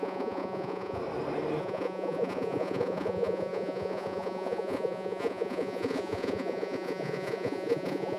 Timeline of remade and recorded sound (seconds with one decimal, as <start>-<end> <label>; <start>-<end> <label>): 0.0-1.0 remade; 1.0-1.6 recorded; 1.6-8.2 remade